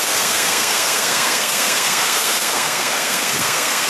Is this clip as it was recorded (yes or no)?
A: no